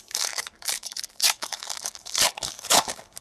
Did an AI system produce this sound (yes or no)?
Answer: yes